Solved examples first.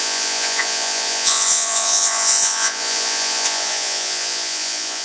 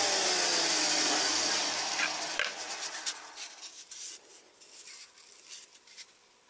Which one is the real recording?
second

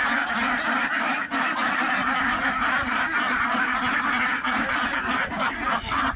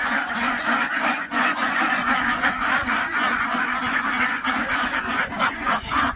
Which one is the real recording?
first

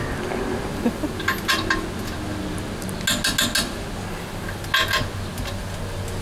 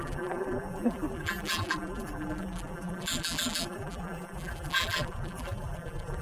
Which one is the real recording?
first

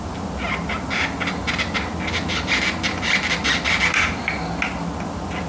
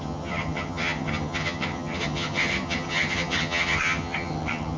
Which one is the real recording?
first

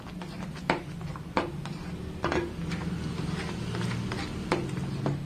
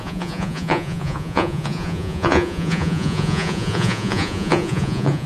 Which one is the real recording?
first